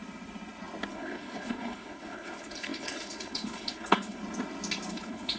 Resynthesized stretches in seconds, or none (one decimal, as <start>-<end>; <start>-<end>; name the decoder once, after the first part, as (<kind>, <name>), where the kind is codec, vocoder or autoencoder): 0.9-4.2 (codec, HILCodec); 4.9-5.4